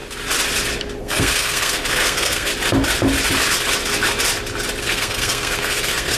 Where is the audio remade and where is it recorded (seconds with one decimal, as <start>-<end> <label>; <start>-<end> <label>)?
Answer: 0.0-1.0 recorded; 1.0-2.5 remade; 2.5-4.8 recorded; 4.8-6.2 remade